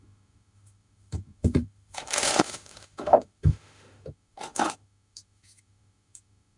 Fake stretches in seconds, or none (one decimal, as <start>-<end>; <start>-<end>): 0.0-6.6